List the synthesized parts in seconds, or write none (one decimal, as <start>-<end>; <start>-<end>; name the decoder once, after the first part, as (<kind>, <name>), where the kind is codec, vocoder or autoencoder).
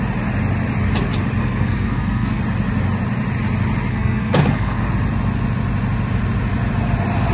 1.4-2.4 (codec, SNAC); 3.9-4.8